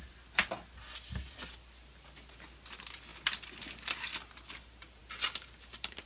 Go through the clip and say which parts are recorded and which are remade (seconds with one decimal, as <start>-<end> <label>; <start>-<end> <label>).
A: 0.0-6.1 recorded

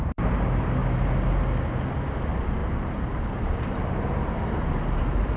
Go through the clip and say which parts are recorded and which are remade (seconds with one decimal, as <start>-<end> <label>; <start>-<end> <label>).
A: 0.0-0.8 remade; 0.8-2.2 recorded; 2.2-5.4 remade

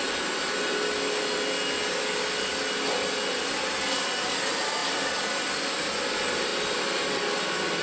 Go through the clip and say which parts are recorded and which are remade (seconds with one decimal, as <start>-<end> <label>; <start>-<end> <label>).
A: 0.0-6.5 recorded; 6.5-7.2 remade; 7.2-7.8 recorded